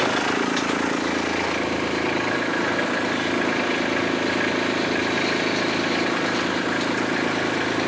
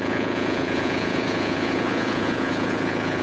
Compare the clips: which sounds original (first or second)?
first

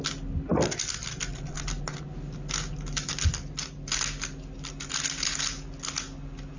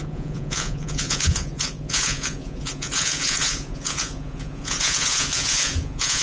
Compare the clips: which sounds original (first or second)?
first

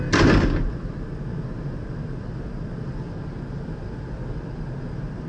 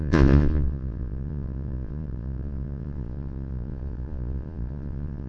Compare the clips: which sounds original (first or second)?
first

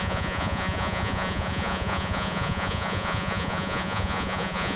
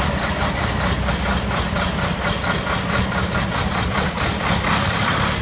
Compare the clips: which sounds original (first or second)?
second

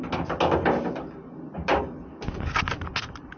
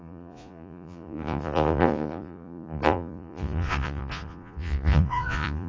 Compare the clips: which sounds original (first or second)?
first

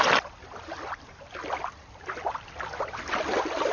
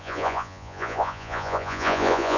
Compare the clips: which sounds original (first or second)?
first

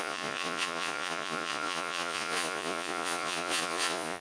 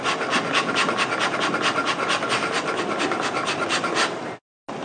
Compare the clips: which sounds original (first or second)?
second